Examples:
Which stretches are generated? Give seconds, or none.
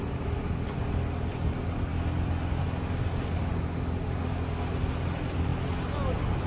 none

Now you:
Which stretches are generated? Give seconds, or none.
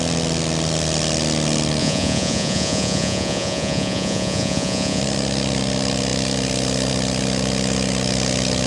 1.8-5.0 (vocoder, Vocos)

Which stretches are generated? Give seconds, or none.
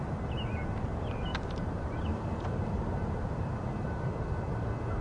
1.3-4.3 (vocoder, BigVGAN v2)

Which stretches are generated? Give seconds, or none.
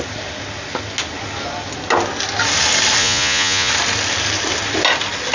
3.0-3.7 (vocoder, Vocos)